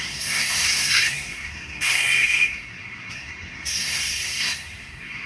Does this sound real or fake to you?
fake